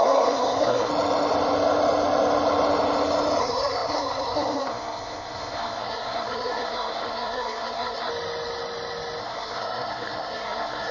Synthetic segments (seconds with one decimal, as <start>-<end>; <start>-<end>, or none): 0.0-0.9; 3.4-8.1; 9.2-10.9